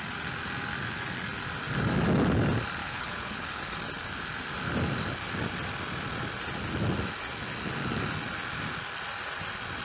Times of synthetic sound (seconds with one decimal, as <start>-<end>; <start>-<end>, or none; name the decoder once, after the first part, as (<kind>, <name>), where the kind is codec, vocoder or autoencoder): 2.8-3.6 (codec, HILCodec)